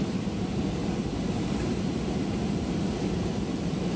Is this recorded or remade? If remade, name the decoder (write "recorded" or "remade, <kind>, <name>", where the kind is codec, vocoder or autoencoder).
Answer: remade, vocoder, BigVGAN v2